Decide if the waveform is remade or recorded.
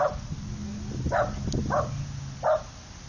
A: recorded